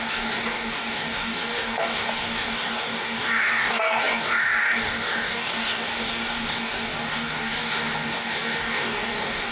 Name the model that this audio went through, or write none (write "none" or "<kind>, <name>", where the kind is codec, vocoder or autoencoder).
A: codec, DAC